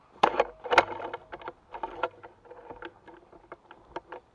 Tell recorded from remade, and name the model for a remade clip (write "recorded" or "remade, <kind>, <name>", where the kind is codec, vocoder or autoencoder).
recorded